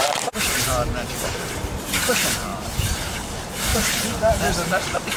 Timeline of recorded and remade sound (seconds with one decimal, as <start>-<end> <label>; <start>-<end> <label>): 0.0-3.7 recorded; 3.7-4.5 remade; 4.5-5.2 recorded